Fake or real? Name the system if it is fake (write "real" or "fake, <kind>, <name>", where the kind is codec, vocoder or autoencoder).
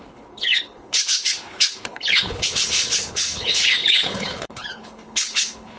fake, codec, HILCodec